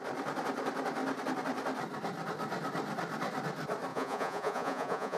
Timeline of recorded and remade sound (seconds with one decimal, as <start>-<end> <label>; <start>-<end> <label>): 0.0-3.9 recorded; 3.9-5.2 remade